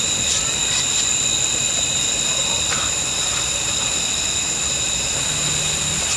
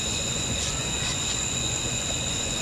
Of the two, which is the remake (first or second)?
second